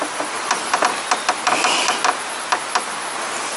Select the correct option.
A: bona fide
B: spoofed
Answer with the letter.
A